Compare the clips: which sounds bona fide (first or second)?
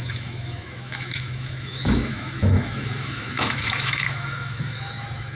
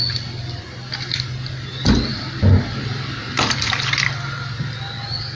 second